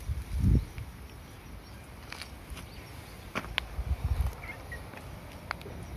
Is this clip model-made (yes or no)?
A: no